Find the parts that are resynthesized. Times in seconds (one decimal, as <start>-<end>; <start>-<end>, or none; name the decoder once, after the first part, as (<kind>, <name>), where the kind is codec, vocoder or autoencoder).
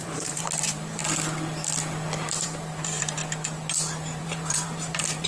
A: 0.0-1.0 (vocoder, BigVGAN v2); 2.3-3.2; 4.2-5.3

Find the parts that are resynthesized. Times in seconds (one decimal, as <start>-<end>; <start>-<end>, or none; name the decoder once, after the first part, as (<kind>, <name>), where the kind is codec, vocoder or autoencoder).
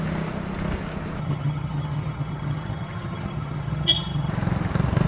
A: 1.2-4.3 (vocoder, HiFi-GAN)